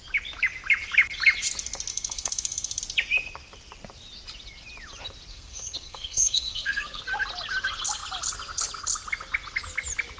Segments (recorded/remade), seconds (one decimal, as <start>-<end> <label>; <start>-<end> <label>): 0.0-1.9 recorded; 1.9-2.8 remade; 2.8-5.3 recorded; 5.3-7.0 remade; 7.0-10.2 recorded